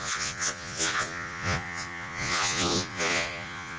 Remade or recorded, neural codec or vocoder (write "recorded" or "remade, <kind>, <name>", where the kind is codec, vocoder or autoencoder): remade, vocoder, Vocos